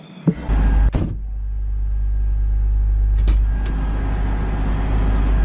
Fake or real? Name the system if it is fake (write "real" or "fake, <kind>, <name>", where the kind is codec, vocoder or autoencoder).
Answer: real